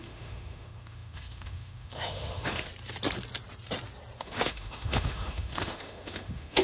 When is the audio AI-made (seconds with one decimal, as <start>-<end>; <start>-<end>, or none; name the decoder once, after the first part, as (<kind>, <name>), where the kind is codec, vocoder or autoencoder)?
0.0-2.7 (autoencoder, DAC-VAE); 4.2-6.6